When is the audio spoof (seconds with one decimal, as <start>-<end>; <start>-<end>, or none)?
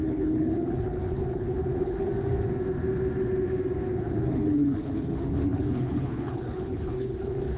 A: 0.0-2.1; 3.9-7.6